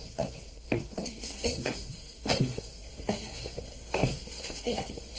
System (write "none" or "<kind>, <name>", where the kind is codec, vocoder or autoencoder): codec, SNAC